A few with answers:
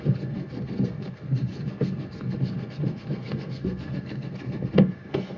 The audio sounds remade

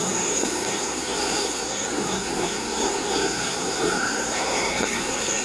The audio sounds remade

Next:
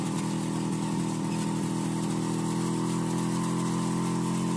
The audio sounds recorded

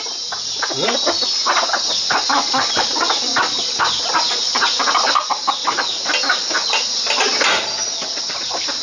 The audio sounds recorded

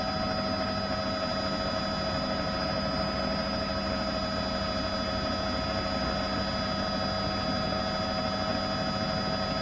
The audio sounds recorded